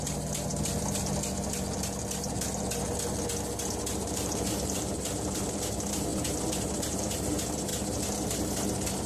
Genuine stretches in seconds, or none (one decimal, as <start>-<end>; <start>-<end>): 0.5-3.7